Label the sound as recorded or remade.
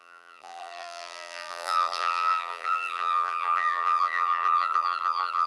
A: remade